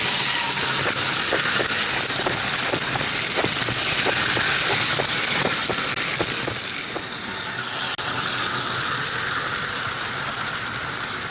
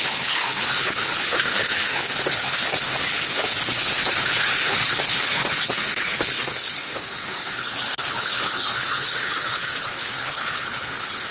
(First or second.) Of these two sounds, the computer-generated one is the second